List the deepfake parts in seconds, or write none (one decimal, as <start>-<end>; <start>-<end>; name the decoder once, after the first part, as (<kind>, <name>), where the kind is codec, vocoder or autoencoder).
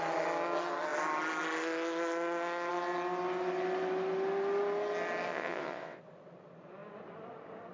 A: 5.3-6.0 (vocoder, WaveNeXt)